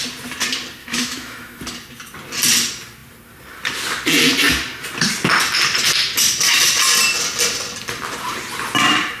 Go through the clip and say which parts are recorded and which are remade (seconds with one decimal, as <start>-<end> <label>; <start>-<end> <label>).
0.0-0.8 recorded; 0.8-1.6 remade; 1.6-9.2 recorded